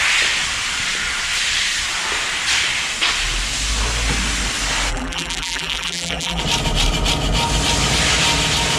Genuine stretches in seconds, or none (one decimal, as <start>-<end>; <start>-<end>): 0.0-4.9; 6.4-8.8